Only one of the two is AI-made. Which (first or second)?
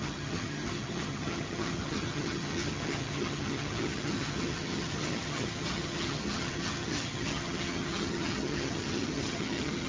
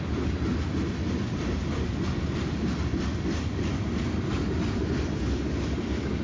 first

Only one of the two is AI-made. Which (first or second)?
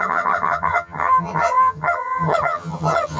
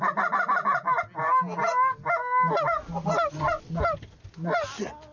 first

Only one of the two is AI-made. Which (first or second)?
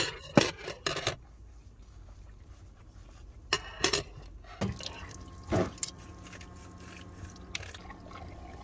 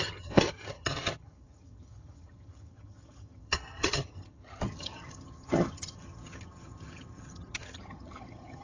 second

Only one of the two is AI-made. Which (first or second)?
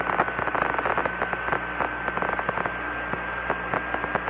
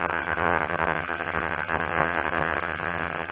second